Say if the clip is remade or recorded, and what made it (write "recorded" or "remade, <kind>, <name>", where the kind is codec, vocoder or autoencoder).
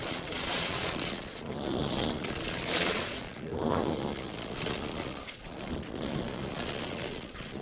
remade, vocoder, Vocos